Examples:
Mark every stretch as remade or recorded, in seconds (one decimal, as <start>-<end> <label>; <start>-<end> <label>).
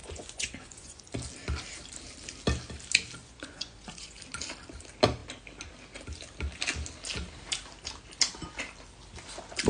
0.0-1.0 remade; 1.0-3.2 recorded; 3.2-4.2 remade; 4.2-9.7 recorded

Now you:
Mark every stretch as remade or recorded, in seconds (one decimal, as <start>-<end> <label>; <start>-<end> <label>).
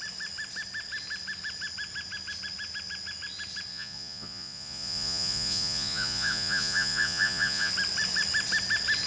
0.0-3.7 recorded; 3.7-7.7 remade; 7.7-9.1 recorded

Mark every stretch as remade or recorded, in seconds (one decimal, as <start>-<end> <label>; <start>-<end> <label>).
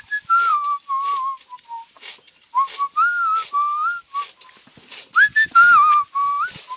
0.0-6.8 recorded